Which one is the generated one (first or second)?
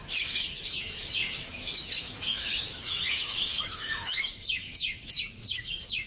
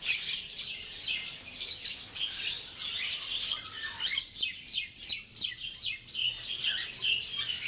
first